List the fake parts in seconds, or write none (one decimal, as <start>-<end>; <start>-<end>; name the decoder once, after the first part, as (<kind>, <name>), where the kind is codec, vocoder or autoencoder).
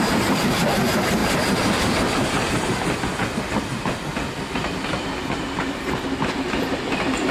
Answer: none